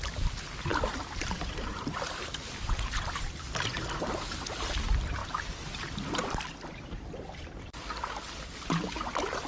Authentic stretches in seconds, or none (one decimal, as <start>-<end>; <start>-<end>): 0.0-0.7; 4.1-5.2; 7.7-9.5